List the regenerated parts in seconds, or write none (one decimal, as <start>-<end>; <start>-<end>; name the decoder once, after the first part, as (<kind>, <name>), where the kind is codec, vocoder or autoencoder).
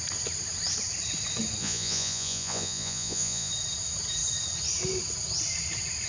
1.6-3.5 (vocoder, Vocos)